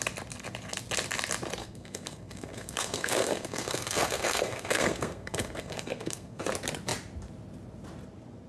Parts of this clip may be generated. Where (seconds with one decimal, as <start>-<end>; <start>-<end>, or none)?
1.6-6.5